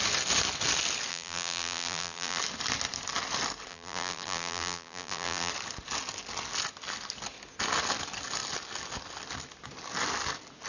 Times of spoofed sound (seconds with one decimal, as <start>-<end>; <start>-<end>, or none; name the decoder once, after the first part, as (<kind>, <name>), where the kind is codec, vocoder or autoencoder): 1.1-2.4 (vocoder, BigVGAN v2); 3.7-5.5